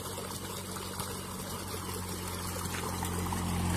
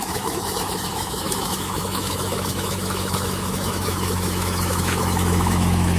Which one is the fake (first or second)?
second